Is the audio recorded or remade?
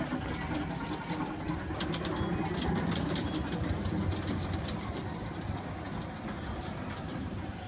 recorded